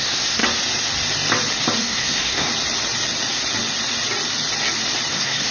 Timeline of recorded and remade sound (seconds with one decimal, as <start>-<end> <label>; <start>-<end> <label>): 0.0-0.4 remade; 0.4-1.8 recorded; 1.8-2.5 remade; 2.5-5.1 recorded; 5.1-5.5 remade